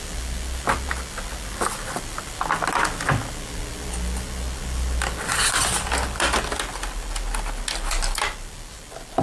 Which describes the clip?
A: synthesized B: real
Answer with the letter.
B